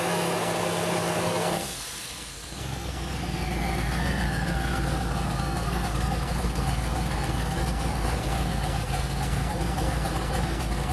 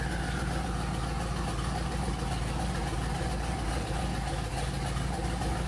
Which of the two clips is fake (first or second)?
first